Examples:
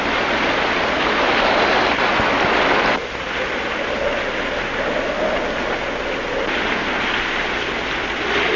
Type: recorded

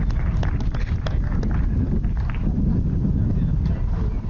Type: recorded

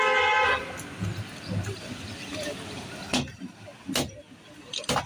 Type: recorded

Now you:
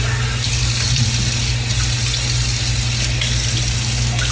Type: recorded